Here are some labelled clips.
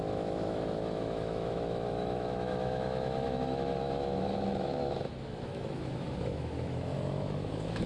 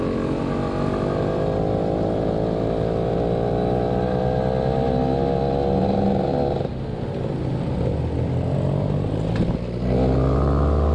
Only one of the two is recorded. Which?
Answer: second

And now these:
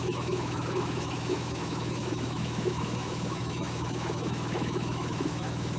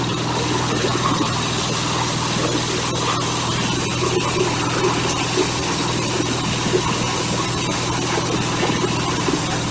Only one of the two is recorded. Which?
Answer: second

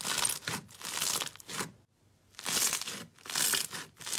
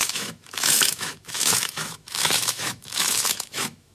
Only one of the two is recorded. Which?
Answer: first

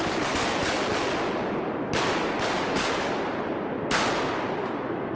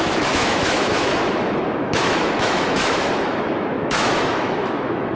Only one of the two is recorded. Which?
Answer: first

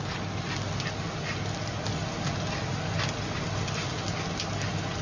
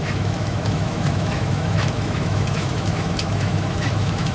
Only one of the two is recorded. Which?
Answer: first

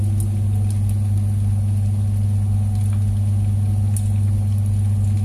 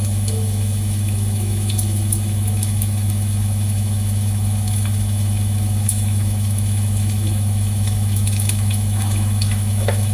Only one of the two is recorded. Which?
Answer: first